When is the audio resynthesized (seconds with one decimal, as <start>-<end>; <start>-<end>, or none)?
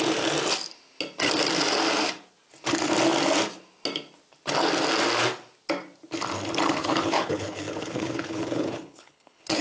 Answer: 6.8-9.6